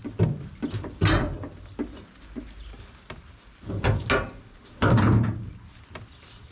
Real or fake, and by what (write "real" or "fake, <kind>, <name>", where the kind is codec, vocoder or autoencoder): real